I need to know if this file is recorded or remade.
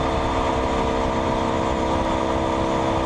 recorded